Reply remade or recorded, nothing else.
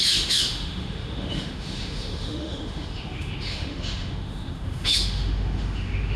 remade